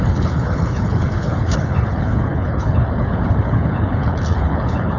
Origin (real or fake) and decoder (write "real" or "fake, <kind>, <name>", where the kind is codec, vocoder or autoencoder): fake, codec, HILCodec